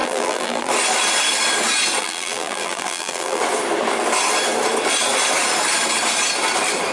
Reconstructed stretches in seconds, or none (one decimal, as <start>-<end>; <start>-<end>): 0.0-0.7; 2.0-3.4